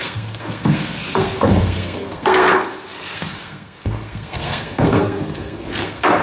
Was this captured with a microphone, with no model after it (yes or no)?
no